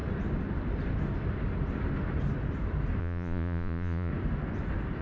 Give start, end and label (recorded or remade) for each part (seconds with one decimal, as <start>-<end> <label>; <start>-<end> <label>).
0.0-3.0 recorded; 3.0-4.1 remade; 4.1-5.0 recorded